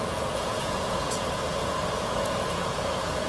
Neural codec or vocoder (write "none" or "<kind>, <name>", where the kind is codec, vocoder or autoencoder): vocoder, Vocos